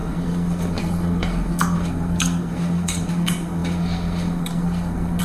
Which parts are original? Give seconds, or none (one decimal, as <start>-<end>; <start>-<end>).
none